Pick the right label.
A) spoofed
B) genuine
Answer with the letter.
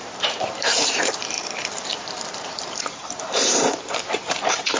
A